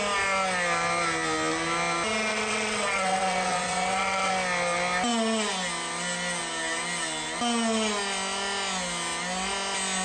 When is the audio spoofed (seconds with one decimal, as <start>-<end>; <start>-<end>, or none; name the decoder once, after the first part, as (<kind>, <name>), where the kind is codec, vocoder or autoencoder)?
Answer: 2.3-4.3 (vocoder, WaveNeXt)